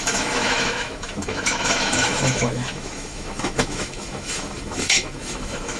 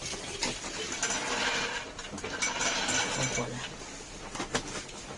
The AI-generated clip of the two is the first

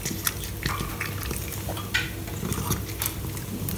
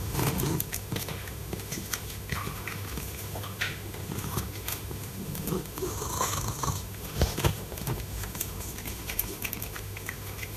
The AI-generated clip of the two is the second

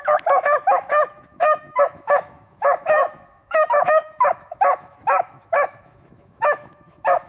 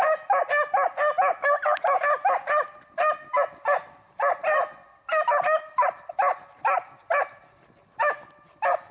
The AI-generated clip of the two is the first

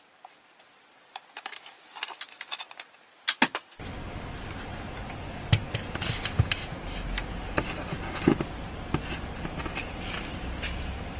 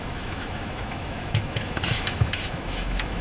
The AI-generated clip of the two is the second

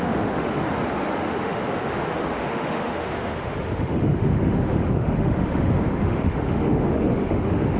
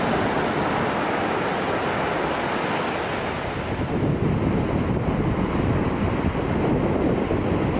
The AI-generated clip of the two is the first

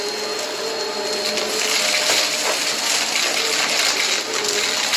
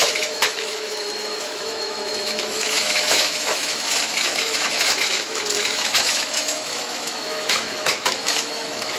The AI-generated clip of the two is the second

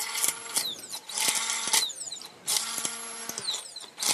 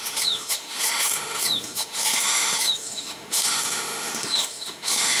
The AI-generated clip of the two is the second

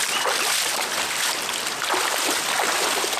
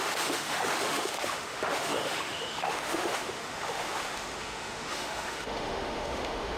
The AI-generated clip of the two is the second